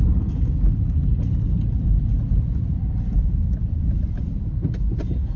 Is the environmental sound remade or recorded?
recorded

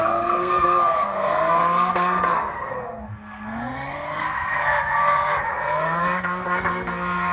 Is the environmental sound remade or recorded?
remade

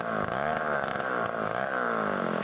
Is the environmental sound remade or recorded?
remade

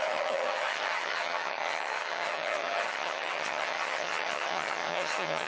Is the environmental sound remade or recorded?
remade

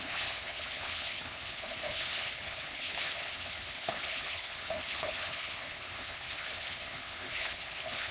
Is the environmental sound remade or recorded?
remade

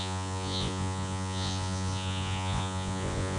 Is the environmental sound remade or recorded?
remade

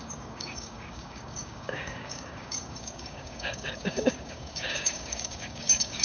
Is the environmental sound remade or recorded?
remade